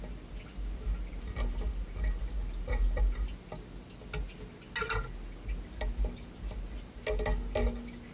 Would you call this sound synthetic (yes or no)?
no